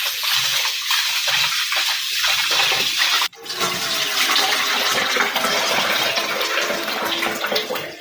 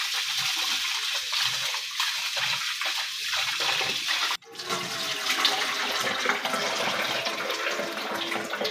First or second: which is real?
second